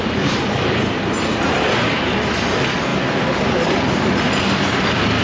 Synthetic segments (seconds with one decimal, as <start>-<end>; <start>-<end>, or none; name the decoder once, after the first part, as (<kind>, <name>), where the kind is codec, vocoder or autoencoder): none